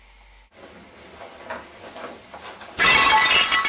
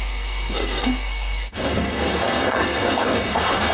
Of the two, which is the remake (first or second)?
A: second